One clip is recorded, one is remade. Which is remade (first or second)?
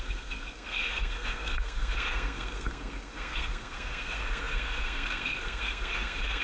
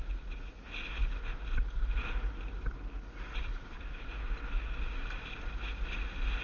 first